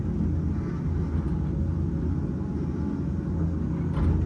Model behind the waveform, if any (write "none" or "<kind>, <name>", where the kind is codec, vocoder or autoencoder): none